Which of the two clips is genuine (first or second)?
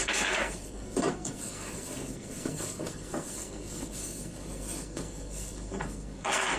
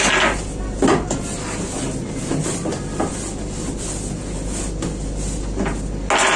second